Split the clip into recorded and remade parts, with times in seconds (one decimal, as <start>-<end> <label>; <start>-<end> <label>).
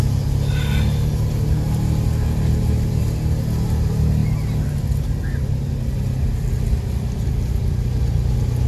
0.0-8.7 recorded